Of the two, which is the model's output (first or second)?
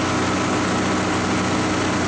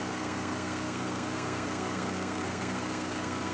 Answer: second